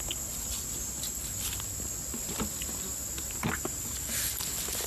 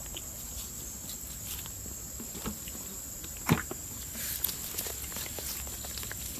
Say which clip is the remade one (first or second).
second